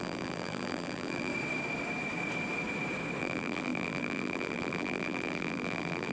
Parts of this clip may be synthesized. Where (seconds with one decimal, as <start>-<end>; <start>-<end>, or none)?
0.0-1.3; 3.2-6.1